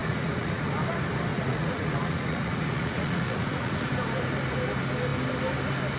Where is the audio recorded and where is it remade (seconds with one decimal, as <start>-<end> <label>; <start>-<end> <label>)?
0.0-0.7 remade; 0.7-1.3 recorded; 1.3-3.9 remade; 3.9-6.0 recorded